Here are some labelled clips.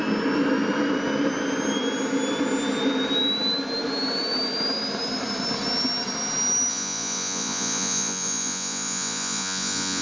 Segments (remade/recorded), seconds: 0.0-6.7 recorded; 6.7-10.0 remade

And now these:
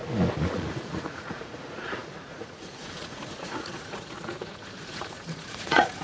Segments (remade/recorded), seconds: 0.0-0.5 recorded; 0.5-6.0 remade

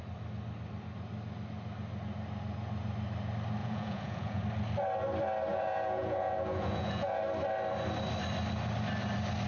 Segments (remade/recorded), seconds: 0.0-3.6 recorded; 3.6-4.4 remade; 4.4-5.5 recorded; 5.5-7.2 remade; 7.2-9.5 recorded

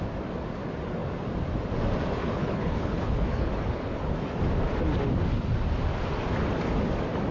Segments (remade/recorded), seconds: 0.0-2.2 recorded; 2.2-4.1 remade; 4.1-7.3 recorded

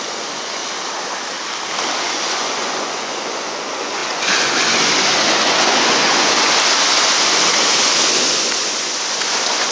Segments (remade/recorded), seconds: 0.0-0.6 remade; 0.6-2.0 recorded; 2.0-9.7 remade